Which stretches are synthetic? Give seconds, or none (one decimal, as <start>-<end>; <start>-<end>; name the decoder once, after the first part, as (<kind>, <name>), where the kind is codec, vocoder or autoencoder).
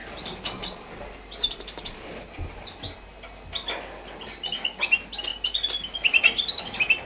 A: none